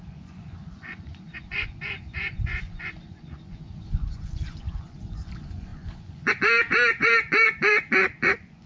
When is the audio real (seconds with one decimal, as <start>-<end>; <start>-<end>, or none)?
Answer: none